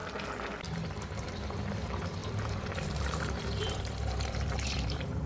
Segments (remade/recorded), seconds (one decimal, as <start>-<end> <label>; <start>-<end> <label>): 0.0-0.6 recorded; 0.6-5.3 remade